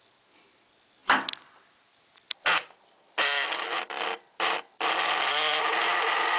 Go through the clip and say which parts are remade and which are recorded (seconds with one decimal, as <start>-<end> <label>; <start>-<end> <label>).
0.0-6.4 recorded